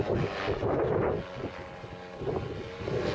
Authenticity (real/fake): real